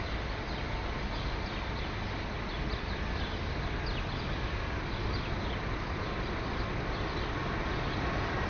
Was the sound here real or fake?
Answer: real